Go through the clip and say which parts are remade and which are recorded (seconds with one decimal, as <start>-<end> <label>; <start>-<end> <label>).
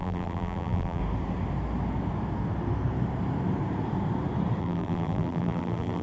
0.0-1.0 remade; 1.0-4.6 recorded; 4.6-6.0 remade